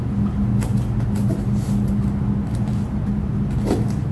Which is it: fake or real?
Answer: real